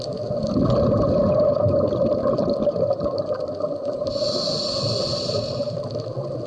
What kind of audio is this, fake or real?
real